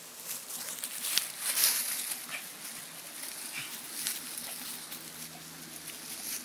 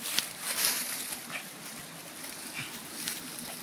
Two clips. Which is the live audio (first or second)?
first